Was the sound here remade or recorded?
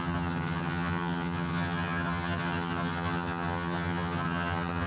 remade